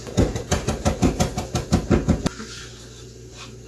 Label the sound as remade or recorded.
recorded